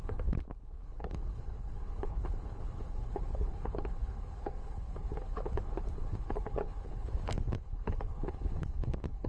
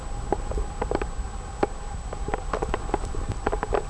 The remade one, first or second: first